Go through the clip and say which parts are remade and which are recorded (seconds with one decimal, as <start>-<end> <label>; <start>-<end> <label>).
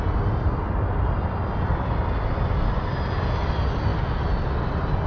0.0-5.1 recorded